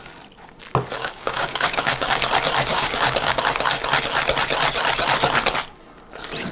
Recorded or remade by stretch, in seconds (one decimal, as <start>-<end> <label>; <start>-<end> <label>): 0.0-1.0 recorded; 1.0-2.2 remade; 2.2-2.7 recorded; 2.7-3.4 remade; 3.4-6.5 recorded

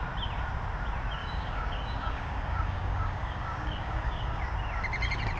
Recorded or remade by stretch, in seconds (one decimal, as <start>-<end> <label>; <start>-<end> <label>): 0.0-1.2 recorded; 1.2-4.4 remade; 4.4-5.4 recorded

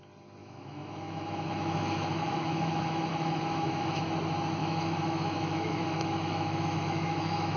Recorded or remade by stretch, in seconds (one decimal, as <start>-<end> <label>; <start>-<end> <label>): 0.0-0.4 recorded; 0.4-4.0 remade; 4.0-4.6 recorded; 4.6-7.6 remade